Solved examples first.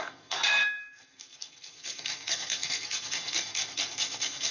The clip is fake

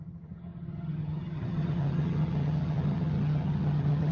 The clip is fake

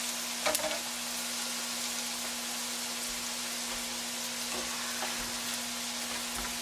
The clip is real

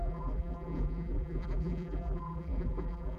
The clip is fake